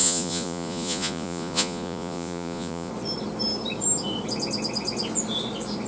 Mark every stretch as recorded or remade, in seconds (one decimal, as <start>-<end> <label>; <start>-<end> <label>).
0.0-2.9 remade; 2.9-5.9 recorded